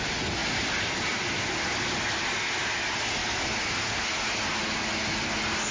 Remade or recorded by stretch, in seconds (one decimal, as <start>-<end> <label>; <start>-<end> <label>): 0.0-5.7 recorded